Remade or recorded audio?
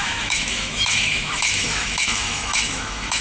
remade